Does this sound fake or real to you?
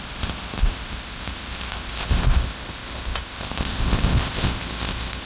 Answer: fake